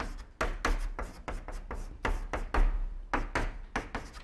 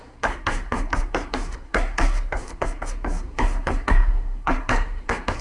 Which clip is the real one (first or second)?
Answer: first